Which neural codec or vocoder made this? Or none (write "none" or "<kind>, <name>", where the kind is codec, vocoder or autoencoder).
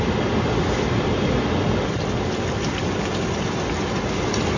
none